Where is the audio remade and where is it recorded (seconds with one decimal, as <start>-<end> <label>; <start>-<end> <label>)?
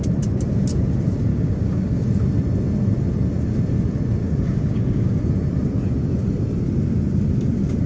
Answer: 0.0-1.3 recorded; 1.3-2.0 remade; 2.0-4.2 recorded; 4.2-5.2 remade; 5.2-7.9 recorded